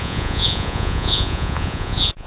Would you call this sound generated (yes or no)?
yes